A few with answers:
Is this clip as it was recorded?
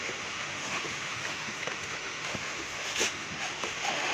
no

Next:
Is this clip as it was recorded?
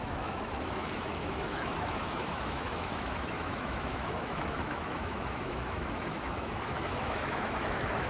no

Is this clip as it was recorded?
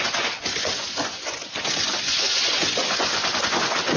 no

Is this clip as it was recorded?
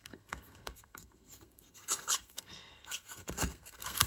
no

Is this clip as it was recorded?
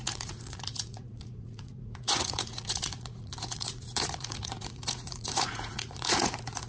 no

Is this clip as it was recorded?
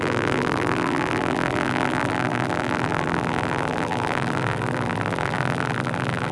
no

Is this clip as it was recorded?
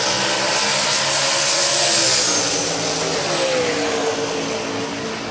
yes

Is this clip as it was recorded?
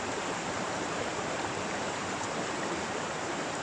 no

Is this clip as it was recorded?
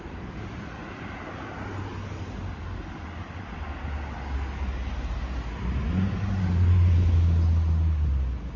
yes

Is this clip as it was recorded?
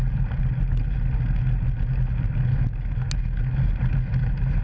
yes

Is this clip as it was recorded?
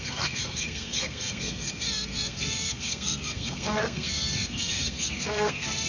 no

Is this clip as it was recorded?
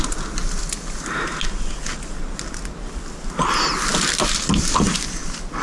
yes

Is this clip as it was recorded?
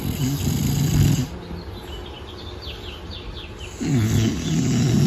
yes